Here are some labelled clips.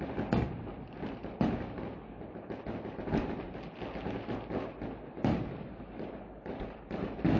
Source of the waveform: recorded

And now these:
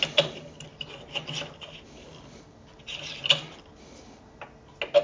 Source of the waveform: recorded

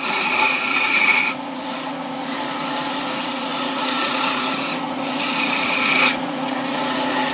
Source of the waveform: remade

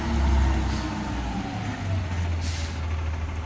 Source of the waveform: recorded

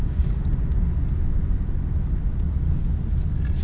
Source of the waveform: recorded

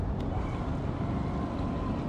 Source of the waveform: recorded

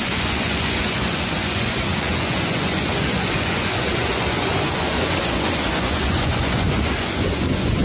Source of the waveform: remade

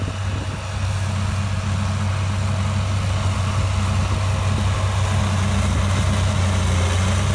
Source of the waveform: recorded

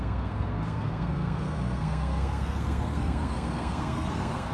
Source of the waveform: remade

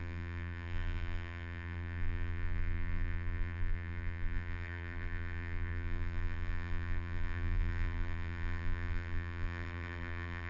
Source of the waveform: remade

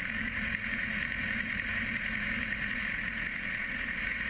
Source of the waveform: remade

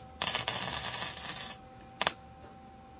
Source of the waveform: recorded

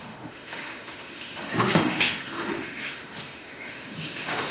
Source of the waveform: remade